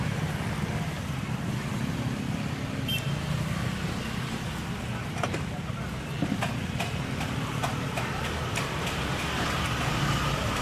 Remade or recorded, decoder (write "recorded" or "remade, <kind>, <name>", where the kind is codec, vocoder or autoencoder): recorded